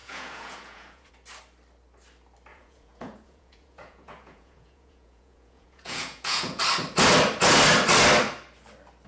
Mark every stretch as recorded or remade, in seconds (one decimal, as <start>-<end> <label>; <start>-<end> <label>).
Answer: 0.0-1.1 remade; 1.1-2.5 recorded; 2.5-6.6 remade; 6.6-9.1 recorded